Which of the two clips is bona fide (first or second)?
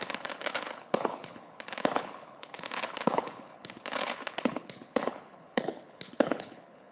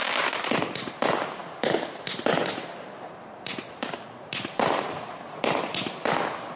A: second